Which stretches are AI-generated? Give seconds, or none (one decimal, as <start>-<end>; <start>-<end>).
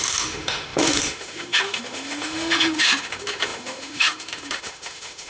0.0-5.3